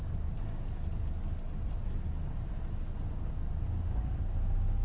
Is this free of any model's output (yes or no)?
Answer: yes